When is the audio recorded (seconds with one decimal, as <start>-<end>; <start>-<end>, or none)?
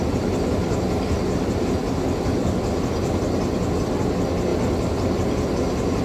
0.0-6.0